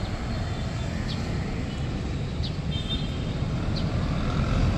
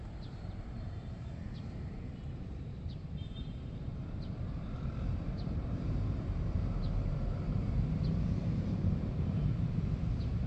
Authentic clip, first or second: first